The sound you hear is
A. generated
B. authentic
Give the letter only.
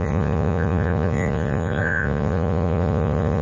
A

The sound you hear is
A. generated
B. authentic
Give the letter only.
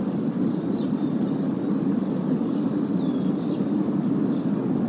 B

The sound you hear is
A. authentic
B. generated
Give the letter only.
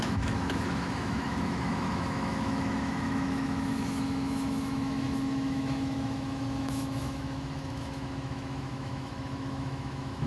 B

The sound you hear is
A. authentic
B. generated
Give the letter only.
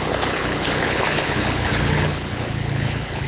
B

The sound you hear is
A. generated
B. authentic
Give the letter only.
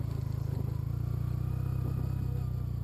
B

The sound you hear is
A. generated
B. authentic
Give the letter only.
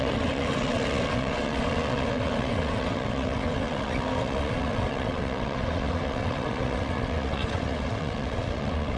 A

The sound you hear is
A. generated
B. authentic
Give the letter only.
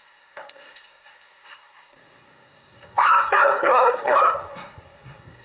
A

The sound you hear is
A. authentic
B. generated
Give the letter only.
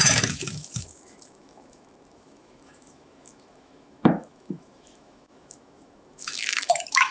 B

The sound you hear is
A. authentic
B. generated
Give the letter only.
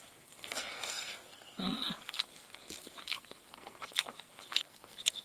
B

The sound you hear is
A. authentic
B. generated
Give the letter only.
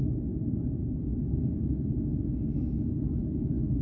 A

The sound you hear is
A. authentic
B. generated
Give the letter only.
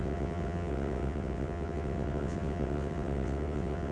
B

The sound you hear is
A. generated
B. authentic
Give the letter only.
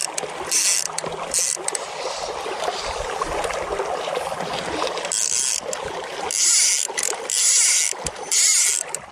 B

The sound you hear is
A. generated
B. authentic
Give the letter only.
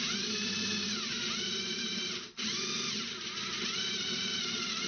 A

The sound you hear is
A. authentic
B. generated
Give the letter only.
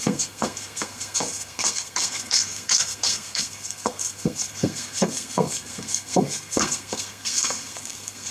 B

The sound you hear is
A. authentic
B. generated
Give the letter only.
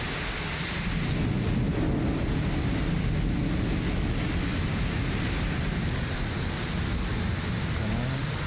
A